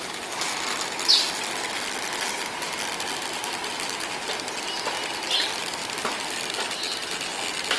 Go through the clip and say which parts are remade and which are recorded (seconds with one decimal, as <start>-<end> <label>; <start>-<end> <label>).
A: 0.0-7.8 recorded